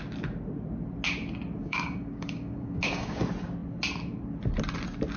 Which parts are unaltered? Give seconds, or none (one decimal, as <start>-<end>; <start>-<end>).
0.0-1.6; 3.2-5.2